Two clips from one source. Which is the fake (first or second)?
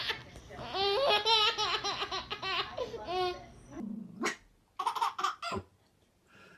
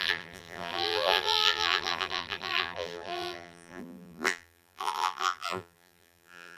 second